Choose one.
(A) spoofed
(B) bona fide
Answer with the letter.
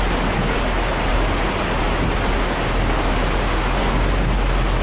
B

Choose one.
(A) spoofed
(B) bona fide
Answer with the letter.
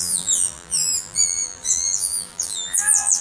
A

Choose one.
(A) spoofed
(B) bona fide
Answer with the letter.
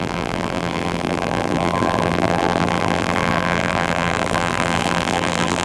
A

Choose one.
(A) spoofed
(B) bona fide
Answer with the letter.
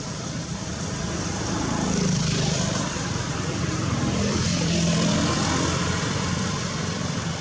A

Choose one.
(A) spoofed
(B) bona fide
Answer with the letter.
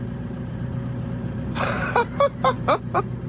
A